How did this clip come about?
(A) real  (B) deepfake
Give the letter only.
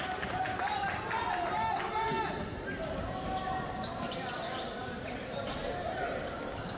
A